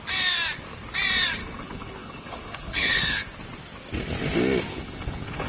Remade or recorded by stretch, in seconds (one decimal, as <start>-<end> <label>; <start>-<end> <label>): 0.0-1.4 recorded; 1.4-3.3 remade; 3.3-4.7 recorded; 4.7-5.5 remade